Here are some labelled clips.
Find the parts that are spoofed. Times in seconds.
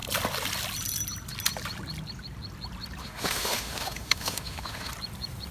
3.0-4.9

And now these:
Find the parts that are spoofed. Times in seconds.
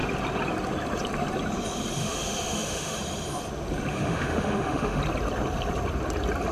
2.0-3.0; 3.9-5.0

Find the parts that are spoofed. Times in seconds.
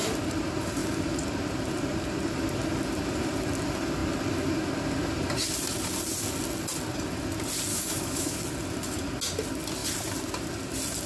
7.7-8.4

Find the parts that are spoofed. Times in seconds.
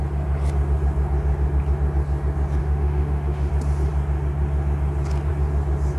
2.6-3.5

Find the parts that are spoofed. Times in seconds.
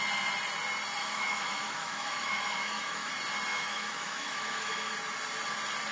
1.0-3.1; 3.5-4.9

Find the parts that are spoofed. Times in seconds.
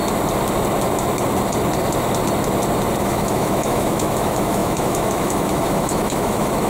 3.0-6.7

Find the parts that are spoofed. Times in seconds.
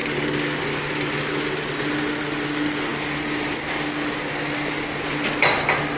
none